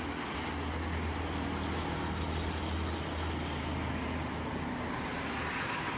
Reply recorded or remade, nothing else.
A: recorded